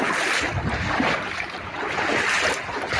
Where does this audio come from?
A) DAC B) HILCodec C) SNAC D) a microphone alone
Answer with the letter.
D